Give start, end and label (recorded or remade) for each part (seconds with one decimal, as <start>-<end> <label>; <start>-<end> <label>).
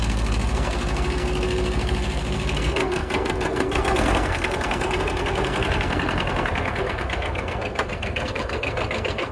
0.0-9.3 remade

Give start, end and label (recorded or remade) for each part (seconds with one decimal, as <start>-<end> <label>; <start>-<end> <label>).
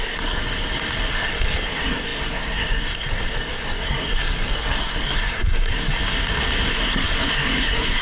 0.0-0.4 remade; 0.4-1.1 recorded; 1.1-6.0 remade; 6.0-6.7 recorded; 6.7-8.0 remade